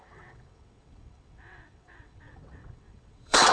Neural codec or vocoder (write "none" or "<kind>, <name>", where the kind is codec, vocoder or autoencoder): vocoder, WaveNeXt